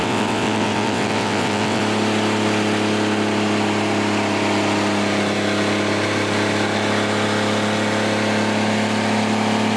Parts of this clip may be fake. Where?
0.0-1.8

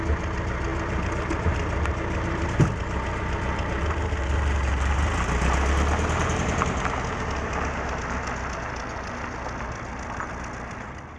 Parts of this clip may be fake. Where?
0.7-2.6

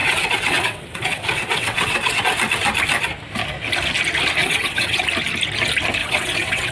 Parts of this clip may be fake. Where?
0.0-2.2; 4.4-5.0; 6.0-6.7

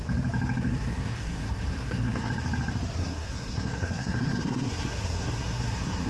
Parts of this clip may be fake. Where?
0.9-2.3; 3.0-6.1

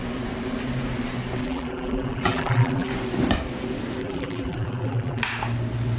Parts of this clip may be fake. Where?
1.4-2.9; 4.0-5.2

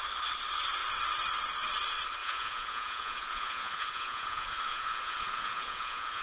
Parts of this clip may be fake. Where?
2.2-6.2

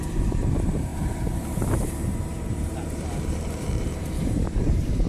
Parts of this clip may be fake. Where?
0.0-5.1